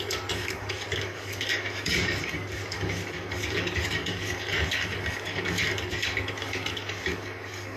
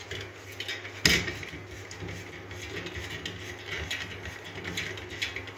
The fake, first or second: first